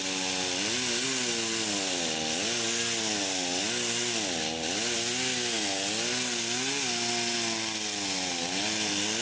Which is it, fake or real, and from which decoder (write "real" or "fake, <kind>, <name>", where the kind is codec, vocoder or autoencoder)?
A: real